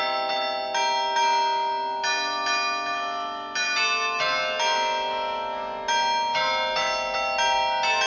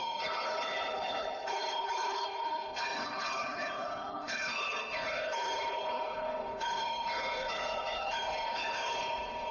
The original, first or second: first